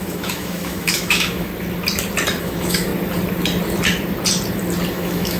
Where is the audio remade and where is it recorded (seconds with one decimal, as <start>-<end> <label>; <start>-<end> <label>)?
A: 0.0-1.5 remade; 1.5-2.4 recorded; 2.4-2.9 remade; 2.9-4.9 recorded; 4.9-5.4 remade